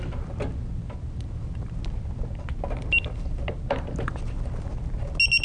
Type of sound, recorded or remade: recorded